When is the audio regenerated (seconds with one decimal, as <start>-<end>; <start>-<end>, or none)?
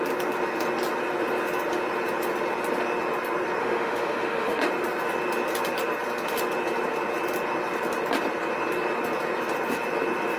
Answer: 3.6-4.7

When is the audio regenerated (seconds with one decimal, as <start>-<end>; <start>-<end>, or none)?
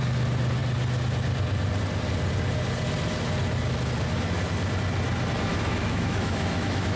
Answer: 5.5-7.0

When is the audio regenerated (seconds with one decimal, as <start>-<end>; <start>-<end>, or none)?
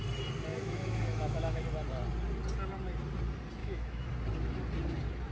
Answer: 0.5-1.6; 3.6-4.1